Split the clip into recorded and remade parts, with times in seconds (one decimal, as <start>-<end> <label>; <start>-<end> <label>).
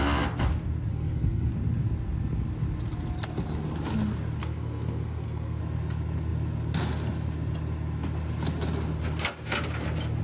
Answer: 0.0-0.9 recorded; 0.9-1.5 remade; 1.5-4.4 recorded; 4.4-5.6 remade; 5.6-10.2 recorded